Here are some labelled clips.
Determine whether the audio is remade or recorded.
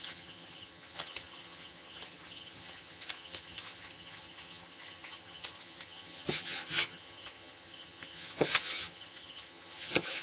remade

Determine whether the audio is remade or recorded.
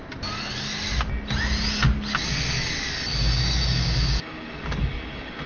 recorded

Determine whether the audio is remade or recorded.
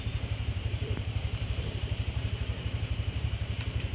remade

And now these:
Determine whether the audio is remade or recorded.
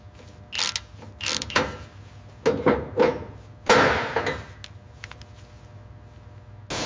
recorded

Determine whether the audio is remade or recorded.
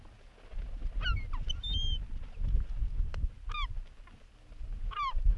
recorded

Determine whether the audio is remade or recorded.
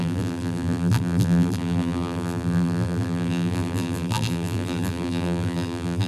remade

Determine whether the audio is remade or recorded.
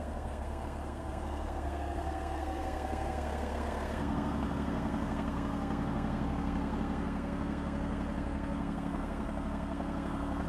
remade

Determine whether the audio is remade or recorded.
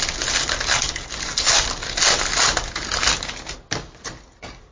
recorded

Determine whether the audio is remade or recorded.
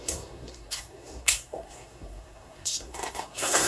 remade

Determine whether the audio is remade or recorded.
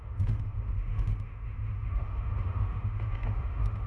remade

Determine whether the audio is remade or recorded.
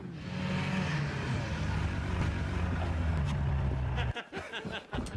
recorded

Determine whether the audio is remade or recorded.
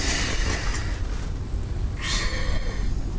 recorded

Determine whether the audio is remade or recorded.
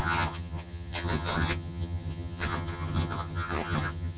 remade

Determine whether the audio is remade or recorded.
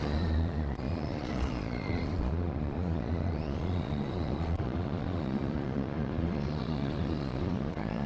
remade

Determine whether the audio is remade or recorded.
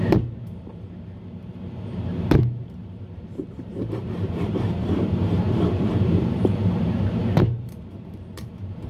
remade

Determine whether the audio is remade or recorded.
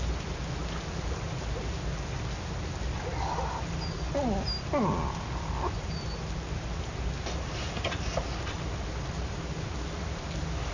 recorded